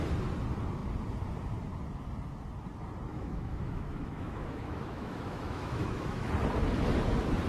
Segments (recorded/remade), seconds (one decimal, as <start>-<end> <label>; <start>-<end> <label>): 0.0-3.1 recorded; 3.1-6.3 remade; 6.3-7.5 recorded